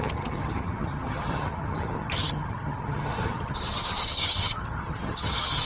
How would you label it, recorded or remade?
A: remade